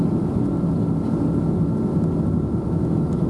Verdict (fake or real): real